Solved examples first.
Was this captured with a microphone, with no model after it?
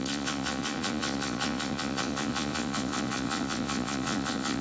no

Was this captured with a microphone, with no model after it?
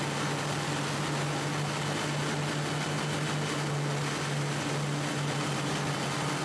yes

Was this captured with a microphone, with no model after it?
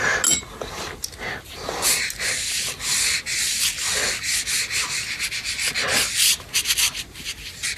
yes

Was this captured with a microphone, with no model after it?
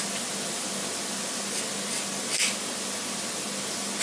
yes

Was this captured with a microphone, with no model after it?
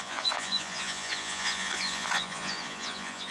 no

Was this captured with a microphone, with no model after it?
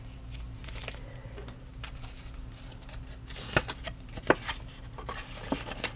yes